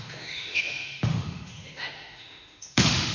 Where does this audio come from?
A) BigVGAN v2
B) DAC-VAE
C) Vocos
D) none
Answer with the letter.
B